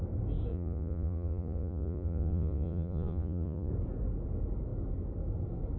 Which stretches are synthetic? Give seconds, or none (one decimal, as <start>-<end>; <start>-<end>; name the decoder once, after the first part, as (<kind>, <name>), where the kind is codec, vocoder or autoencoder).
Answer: 0.5-3.7 (vocoder, Vocos)